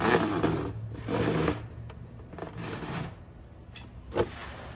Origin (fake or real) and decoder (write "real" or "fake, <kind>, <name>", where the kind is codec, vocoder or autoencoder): real